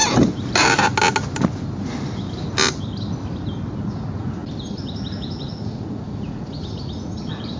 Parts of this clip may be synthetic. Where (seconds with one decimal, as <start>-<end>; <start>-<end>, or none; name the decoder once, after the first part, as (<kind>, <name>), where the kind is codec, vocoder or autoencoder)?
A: 3.8-4.4 (vocoder, Vocos); 5.1-7.6